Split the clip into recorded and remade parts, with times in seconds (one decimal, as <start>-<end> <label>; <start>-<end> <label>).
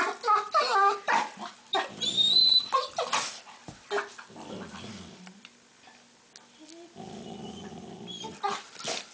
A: 0.0-9.1 recorded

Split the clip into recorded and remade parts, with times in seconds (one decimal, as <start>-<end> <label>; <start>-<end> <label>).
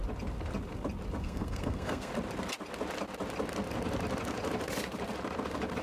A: 0.0-1.2 recorded; 1.2-2.1 remade; 2.1-5.8 recorded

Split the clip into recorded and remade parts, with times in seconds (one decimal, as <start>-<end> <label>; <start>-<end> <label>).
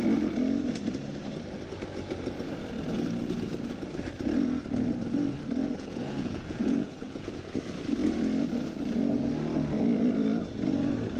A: 0.0-5.6 recorded; 5.6-7.3 remade; 7.3-11.2 recorded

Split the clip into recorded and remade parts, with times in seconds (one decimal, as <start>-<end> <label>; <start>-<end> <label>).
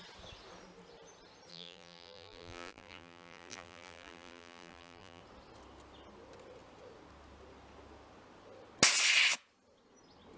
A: 0.0-1.5 recorded; 1.5-5.2 remade; 5.2-10.4 recorded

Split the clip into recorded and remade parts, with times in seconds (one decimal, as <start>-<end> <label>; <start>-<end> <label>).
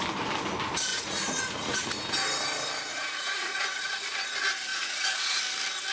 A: 0.0-0.9 recorded; 0.9-1.9 remade; 1.9-2.9 recorded; 2.9-4.2 remade; 4.2-4.7 recorded; 4.7-5.4 remade; 5.4-5.9 recorded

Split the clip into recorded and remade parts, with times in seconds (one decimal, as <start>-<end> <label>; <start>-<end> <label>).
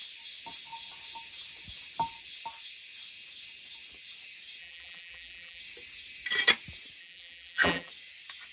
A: 0.0-4.6 recorded; 4.6-5.6 remade; 5.6-7.0 recorded; 7.0-7.9 remade; 7.9-8.5 recorded